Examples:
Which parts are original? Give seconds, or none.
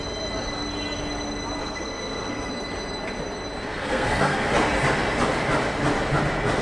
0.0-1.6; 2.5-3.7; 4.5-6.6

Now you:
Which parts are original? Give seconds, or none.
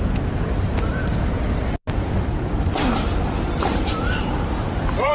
0.0-3.7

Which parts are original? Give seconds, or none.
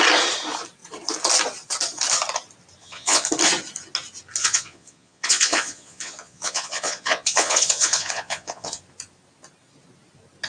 0.0-2.8; 3.3-4.4; 8.8-10.5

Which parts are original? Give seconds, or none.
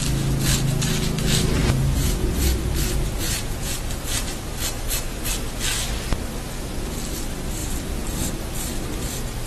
0.0-1.6; 2.4-3.2; 3.7-9.5